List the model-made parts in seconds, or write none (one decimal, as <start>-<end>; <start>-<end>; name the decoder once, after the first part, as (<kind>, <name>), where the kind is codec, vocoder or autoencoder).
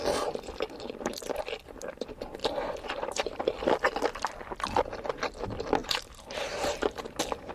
2.4-3.4 (vocoder, BigVGAN v2); 5.8-7.0